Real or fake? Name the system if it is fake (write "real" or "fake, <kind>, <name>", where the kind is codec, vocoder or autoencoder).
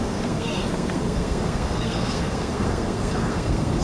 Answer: fake, codec, SNAC